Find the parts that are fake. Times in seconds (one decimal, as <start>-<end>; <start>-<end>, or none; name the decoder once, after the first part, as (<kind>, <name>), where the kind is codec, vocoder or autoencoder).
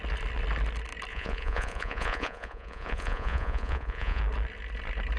1.1-4.2 (vocoder, Vocos)